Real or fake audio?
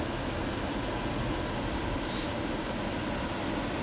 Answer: real